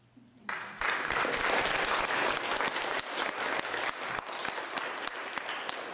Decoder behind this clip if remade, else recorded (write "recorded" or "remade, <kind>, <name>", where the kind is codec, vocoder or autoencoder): recorded